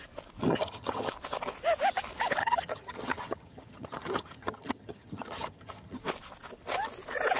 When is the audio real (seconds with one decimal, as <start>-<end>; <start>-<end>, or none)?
0.0-0.4; 1.1-2.4; 6.0-7.4